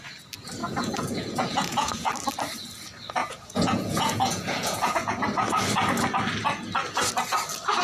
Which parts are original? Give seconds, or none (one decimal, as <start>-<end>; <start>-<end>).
0.0-0.6; 2.1-3.2; 5.2-7.8